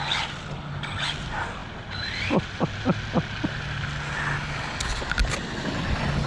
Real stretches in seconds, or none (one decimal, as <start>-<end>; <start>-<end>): 0.0-6.3